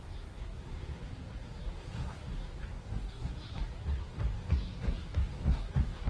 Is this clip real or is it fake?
fake